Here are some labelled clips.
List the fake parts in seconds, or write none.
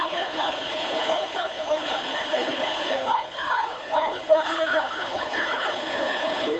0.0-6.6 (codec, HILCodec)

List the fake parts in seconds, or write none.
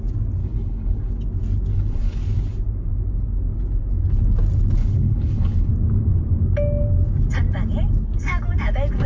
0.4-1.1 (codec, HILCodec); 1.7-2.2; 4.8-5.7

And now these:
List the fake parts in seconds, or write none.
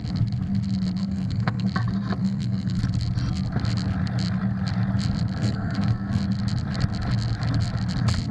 1.0-1.7 (codec, SNAC); 2.2-2.8; 5.4-6.2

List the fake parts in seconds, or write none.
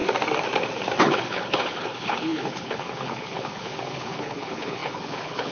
1.0-5.5 (codec, HILCodec)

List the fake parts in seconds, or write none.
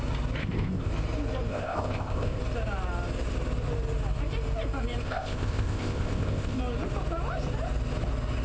0.4-0.9 (codec, ZipCodec); 1.5-2.4; 5.0-6.6